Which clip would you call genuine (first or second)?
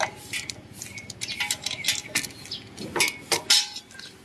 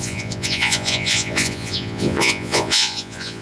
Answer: first